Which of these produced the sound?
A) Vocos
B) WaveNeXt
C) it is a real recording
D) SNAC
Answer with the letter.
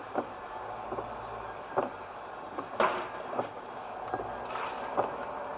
C